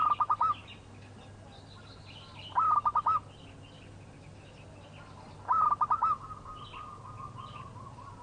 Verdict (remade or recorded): recorded